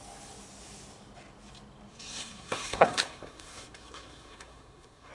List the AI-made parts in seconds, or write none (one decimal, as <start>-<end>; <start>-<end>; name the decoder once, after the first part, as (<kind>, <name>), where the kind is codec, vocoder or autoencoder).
1.9-5.1 (codec, SNAC)